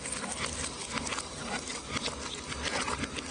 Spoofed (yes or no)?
no